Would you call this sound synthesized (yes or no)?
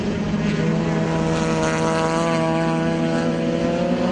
no